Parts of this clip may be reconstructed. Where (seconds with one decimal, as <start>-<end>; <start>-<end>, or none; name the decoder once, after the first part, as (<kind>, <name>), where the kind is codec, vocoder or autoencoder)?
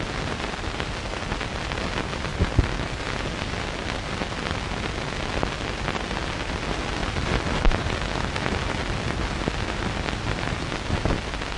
2.3-3.0 (vocoder, BigVGAN v2); 7.0-10.7